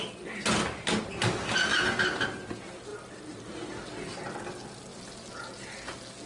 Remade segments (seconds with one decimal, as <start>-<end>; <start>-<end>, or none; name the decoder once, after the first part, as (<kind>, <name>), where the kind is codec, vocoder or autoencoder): none